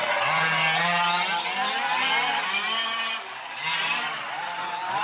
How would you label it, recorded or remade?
recorded